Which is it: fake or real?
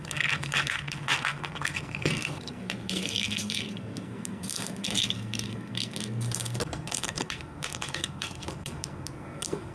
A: fake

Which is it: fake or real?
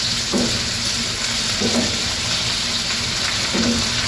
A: real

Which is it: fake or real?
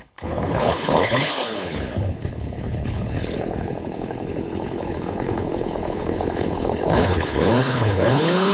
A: fake